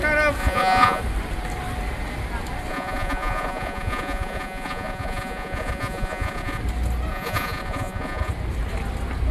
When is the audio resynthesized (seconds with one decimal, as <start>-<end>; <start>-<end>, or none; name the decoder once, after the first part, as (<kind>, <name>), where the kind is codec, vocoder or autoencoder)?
0.4-1.0 (vocoder, Vocos); 2.7-6.6; 7.1-8.3